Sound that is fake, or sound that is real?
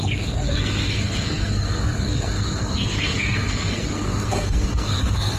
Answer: fake